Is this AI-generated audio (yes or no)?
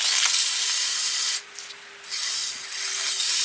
no